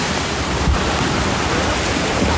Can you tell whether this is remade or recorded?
recorded